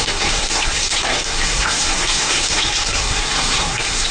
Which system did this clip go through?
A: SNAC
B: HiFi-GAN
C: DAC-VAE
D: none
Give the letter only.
A